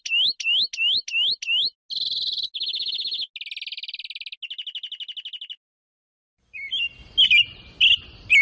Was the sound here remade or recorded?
recorded